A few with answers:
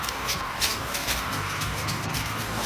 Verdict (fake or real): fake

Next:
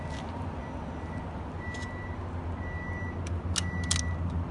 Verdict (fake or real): real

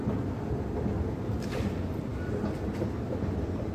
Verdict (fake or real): real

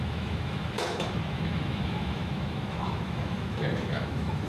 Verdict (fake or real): fake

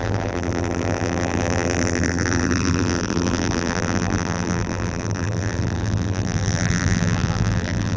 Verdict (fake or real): fake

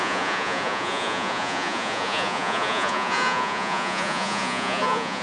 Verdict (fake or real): fake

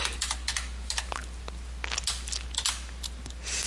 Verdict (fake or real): real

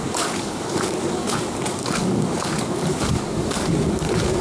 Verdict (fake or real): fake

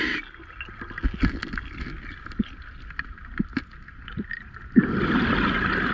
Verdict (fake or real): real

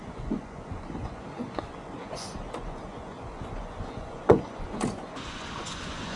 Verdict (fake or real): fake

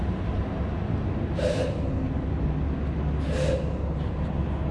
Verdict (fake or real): real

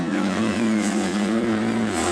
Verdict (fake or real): fake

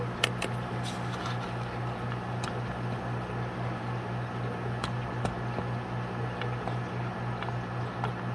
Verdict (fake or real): real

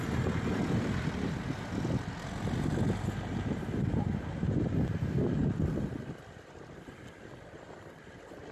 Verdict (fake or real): real